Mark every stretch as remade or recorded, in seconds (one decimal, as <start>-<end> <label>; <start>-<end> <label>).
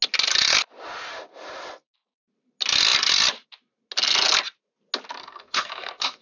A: 0.0-5.2 recorded; 5.2-6.2 remade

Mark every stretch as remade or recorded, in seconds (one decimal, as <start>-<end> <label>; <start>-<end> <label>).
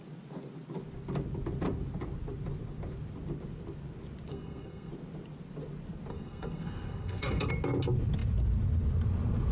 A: 0.0-4.3 recorded; 4.3-4.9 remade; 4.9-6.1 recorded; 6.1-7.5 remade; 7.5-9.5 recorded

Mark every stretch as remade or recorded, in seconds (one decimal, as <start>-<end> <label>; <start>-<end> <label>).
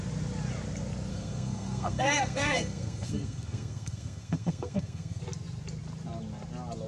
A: 0.0-1.1 recorded; 1.1-5.2 remade; 5.2-6.9 recorded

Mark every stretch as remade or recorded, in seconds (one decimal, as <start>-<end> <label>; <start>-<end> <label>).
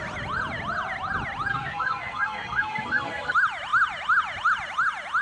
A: 0.0-1.5 recorded; 1.5-3.3 remade; 3.3-5.2 recorded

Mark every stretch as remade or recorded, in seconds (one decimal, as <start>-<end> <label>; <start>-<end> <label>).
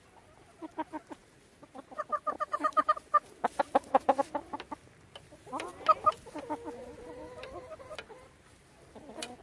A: 0.0-9.4 recorded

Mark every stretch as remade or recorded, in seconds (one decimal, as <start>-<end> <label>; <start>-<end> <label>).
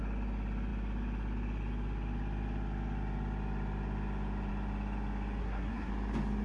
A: 0.0-5.4 recorded; 5.4-5.9 remade; 5.9-6.4 recorded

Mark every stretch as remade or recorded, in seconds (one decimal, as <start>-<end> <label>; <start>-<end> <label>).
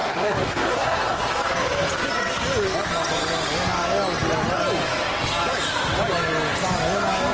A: 0.0-1.2 remade; 1.2-7.3 recorded